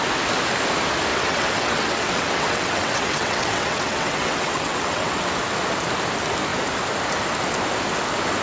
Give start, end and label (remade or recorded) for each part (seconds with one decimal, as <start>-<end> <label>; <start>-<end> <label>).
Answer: 0.0-1.1 recorded; 1.1-5.3 remade; 5.3-8.4 recorded